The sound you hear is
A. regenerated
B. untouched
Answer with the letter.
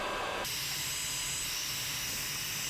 B